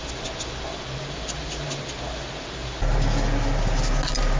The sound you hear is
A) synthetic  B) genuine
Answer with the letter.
B